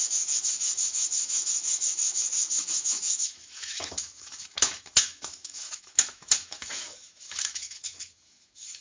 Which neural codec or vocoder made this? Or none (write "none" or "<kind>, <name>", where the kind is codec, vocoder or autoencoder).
autoencoder, DAC-VAE